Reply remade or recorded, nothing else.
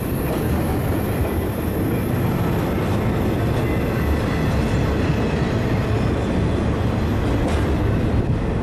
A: recorded